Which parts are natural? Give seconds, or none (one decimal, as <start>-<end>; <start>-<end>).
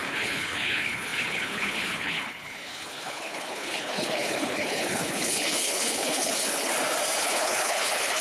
6.7-7.2